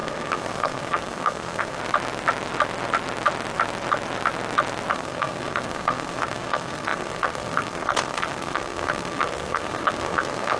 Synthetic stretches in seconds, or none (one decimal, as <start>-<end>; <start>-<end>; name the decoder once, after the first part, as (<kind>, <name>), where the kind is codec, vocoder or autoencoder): 0.0-1.8 (codec, SNAC); 4.9-10.6